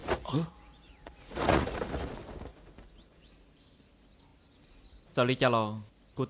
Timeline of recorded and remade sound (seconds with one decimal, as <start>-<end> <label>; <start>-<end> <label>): 0.0-2.1 remade; 2.1-2.5 recorded; 2.5-3.3 remade; 3.3-6.3 recorded